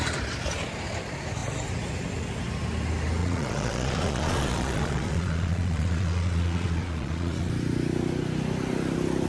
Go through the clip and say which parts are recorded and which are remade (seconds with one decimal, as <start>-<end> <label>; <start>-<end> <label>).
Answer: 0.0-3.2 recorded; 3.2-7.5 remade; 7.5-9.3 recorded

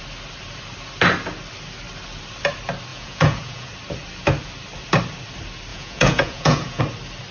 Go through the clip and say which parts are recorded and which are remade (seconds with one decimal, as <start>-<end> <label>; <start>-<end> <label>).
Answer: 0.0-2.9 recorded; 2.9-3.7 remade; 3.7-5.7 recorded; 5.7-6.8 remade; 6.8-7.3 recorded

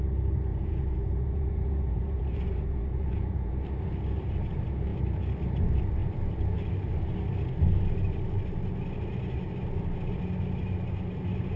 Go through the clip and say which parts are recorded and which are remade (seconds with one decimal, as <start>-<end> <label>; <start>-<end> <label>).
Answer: 0.0-0.5 recorded; 0.5-3.5 remade; 3.5-11.6 recorded

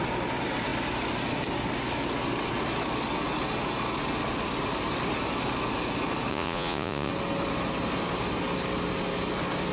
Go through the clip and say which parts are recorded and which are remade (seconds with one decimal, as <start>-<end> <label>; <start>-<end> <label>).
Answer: 0.0-6.3 recorded; 6.3-7.1 remade; 7.1-9.7 recorded

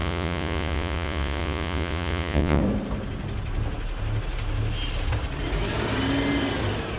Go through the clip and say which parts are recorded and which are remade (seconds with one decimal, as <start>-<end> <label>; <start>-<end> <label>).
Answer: 0.0-2.6 remade; 2.6-7.0 recorded